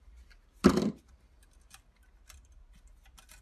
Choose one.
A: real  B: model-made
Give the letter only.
A